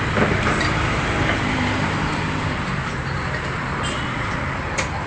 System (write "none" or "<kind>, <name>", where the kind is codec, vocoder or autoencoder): vocoder, BigVGAN v2